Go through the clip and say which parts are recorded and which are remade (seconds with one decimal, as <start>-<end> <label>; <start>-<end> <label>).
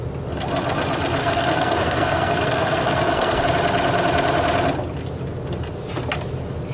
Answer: 0.0-1.2 recorded; 1.2-3.4 remade; 3.4-6.7 recorded